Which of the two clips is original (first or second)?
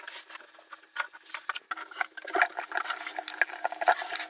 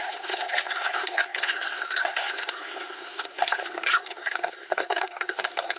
first